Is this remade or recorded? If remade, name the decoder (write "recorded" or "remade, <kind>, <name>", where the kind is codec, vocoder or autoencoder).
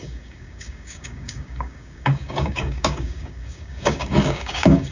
remade, codec, DAC